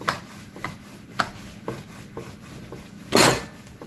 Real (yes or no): yes